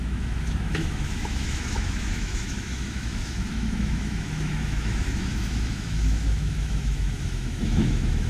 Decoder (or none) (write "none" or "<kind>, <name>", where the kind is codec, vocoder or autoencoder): autoencoder, DAC-VAE